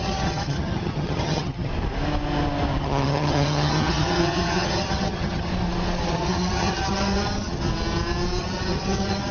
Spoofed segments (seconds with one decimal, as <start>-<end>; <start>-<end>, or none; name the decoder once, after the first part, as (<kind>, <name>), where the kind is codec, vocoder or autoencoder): 0.0-1.7 (vocoder, HiFi-GAN); 2.8-5.5; 6.1-7.7; 8.4-9.3